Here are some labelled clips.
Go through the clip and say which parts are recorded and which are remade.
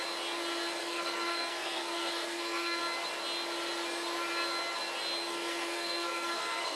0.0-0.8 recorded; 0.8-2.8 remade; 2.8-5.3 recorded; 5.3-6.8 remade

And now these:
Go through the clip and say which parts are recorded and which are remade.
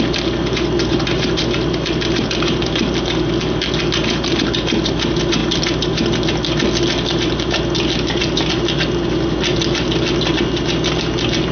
0.0-11.5 recorded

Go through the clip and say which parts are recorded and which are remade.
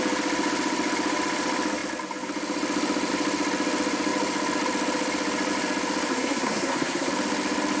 0.0-6.1 recorded; 6.1-7.1 remade; 7.1-7.8 recorded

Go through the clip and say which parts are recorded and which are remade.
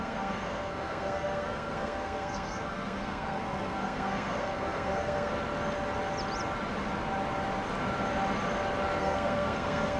0.0-5.3 remade; 5.3-9.0 recorded; 9.0-10.0 remade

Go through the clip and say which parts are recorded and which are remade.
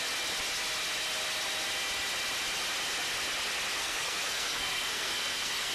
0.0-3.8 recorded; 3.8-5.7 remade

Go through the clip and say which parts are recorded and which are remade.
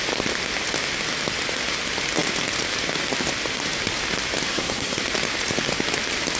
0.0-4.5 recorded; 4.5-5.0 remade; 5.0-6.4 recorded